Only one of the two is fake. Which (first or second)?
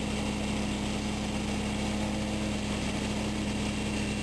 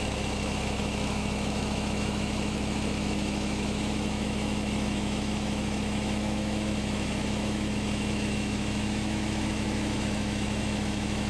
second